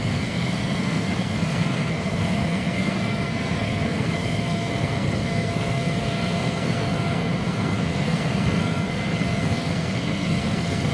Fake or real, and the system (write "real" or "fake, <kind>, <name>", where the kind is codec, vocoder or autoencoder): fake, codec, SNAC